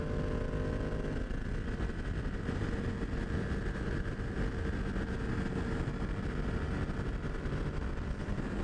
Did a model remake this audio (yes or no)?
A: no